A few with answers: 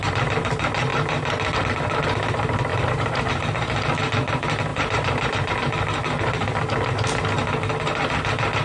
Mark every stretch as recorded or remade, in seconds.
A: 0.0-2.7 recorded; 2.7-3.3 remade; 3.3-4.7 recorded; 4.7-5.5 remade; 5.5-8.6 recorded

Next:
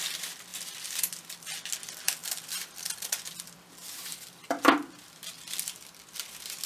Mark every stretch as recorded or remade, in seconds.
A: 0.0-2.2 recorded; 2.2-4.4 remade; 4.4-6.7 recorded

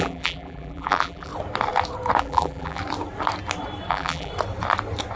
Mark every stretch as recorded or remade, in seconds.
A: 0.0-1.3 remade; 1.3-2.2 recorded; 2.2-2.8 remade; 2.8-3.9 recorded; 3.9-4.3 remade; 4.3-5.2 recorded

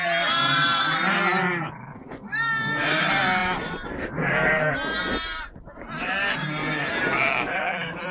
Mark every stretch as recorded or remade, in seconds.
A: 0.0-8.1 remade

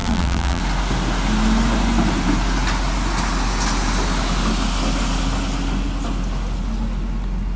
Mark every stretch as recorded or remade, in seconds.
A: 0.0-0.6 remade; 0.6-7.6 recorded

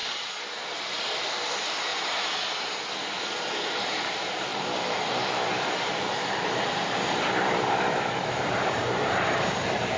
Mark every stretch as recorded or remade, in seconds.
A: 0.0-0.7 recorded; 0.7-1.9 remade; 1.9-3.1 recorded; 3.1-10.0 remade